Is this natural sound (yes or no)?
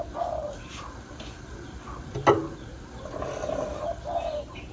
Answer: yes